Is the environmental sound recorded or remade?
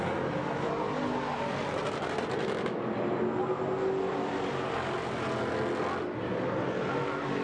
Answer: recorded